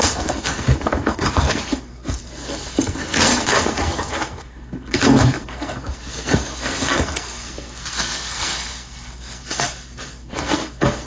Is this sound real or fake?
fake